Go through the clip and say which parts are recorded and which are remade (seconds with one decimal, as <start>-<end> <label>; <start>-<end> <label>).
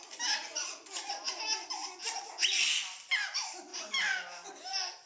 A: 0.0-5.1 recorded